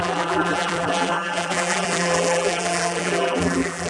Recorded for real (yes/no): no